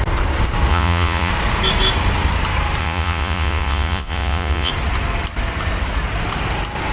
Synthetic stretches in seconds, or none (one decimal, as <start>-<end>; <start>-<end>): 0.7-1.3; 2.8-4.7